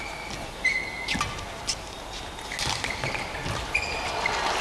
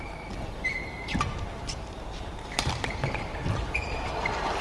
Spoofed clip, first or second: second